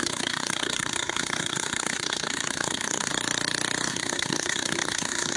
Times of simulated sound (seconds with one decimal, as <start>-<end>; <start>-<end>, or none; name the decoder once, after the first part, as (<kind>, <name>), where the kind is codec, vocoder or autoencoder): 0.0-3.1 (codec, SNAC); 3.9-5.4